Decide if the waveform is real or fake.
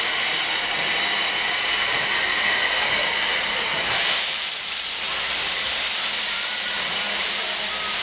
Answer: real